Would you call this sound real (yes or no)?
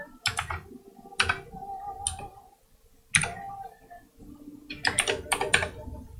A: yes